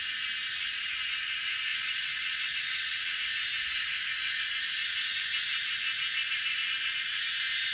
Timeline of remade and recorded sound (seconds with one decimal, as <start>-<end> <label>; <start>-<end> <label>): 0.0-1.7 recorded; 1.7-3.2 remade; 3.2-7.7 recorded